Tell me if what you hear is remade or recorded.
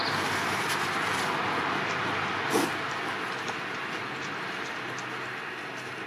recorded